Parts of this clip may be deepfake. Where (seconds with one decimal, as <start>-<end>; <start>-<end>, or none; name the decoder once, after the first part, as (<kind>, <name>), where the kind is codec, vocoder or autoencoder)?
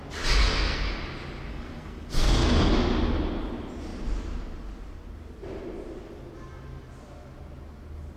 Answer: 0.4-0.9 (codec, SNAC); 1.5-2.7